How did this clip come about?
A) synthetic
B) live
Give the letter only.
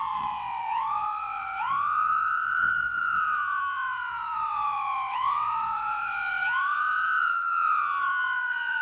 A